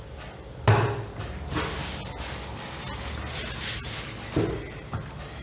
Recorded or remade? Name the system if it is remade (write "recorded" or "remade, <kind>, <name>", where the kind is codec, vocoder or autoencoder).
recorded